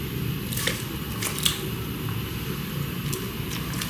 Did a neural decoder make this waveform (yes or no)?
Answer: no